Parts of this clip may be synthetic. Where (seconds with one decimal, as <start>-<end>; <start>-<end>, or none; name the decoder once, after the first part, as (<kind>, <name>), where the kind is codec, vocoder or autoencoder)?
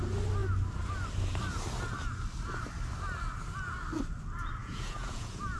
4.6-5.6 (vocoder, Vocos)